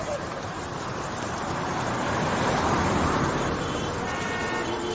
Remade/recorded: remade